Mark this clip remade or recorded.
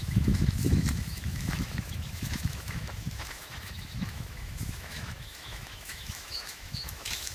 remade